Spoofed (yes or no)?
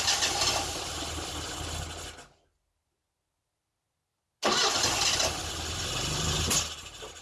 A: no